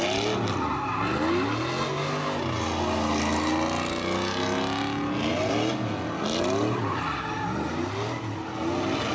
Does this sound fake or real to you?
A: real